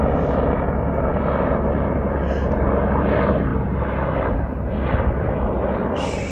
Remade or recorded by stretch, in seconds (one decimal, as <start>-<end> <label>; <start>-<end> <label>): 0.0-6.3 recorded